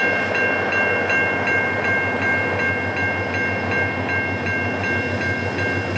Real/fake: real